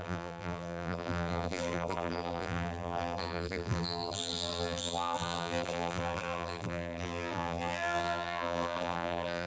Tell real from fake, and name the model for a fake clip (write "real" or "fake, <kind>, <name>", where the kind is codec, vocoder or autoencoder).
fake, vocoder, BigVGAN v2